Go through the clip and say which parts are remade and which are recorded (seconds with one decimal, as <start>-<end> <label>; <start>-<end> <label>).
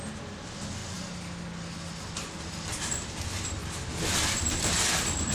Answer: 0.0-0.8 remade; 0.8-2.5 recorded; 2.5-3.6 remade; 3.6-4.5 recorded; 4.5-5.3 remade